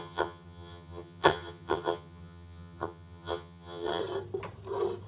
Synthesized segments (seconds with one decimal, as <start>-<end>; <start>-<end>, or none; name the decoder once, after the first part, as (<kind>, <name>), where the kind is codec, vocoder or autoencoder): 0.0-4.0 (vocoder, HiFi-GAN)